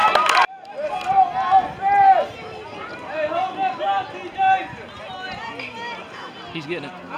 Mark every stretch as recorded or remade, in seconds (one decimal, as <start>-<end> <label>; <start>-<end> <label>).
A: 0.0-7.2 recorded